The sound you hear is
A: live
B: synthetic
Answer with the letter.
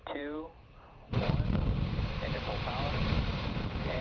B